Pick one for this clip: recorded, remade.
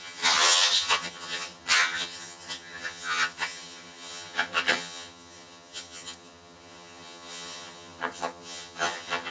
remade